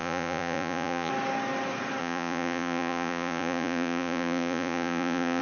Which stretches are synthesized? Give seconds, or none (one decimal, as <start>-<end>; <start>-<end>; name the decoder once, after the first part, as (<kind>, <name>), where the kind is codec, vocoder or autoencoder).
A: 0.0-1.1 (vocoder, Vocos); 2.0-5.4